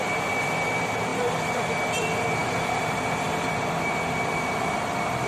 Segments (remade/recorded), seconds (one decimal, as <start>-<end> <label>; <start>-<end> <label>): 0.0-5.3 remade